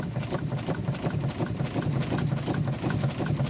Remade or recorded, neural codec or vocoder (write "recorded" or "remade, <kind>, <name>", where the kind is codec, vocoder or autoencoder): recorded